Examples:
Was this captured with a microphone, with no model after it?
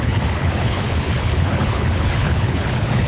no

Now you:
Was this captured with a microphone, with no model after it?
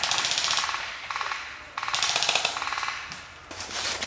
yes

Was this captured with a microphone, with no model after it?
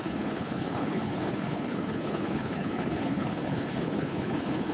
no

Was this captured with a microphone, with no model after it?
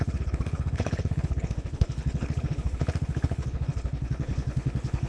no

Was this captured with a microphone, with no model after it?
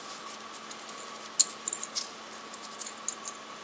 yes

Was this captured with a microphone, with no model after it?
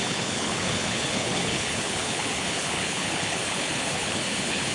no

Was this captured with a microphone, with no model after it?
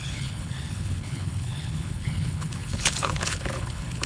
no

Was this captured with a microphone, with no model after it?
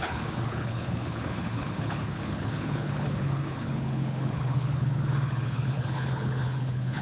no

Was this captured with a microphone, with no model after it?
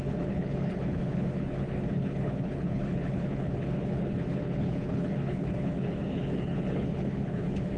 no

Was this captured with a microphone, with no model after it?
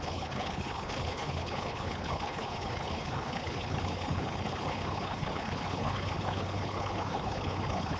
no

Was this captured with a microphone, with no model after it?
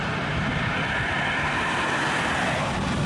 yes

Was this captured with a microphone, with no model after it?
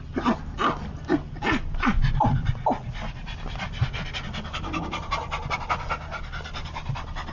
yes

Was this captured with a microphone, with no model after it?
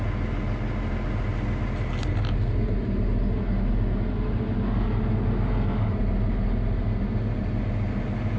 yes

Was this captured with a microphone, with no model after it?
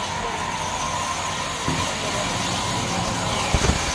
yes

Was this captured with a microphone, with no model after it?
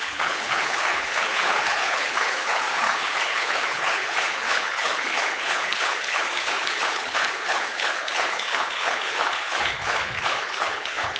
no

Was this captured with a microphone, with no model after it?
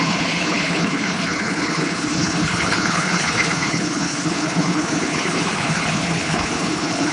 no